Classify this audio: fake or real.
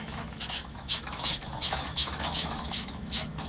fake